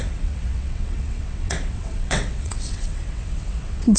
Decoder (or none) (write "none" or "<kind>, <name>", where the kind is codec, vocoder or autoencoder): vocoder, WaveNeXt